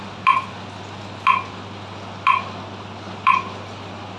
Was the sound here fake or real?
real